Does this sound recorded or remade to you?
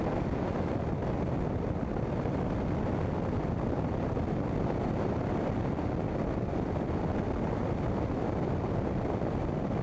recorded